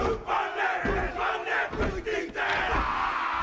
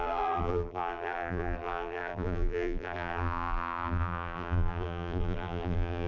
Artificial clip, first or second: second